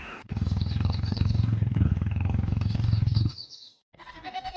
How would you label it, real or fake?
fake